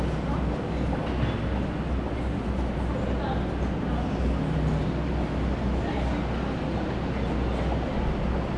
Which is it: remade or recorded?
recorded